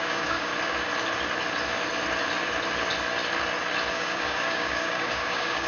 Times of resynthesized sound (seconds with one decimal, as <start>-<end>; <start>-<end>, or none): 0.0-0.5; 3.9-5.7